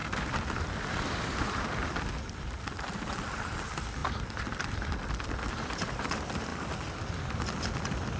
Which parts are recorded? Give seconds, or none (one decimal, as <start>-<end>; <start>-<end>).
2.5-4.0; 4.7-8.2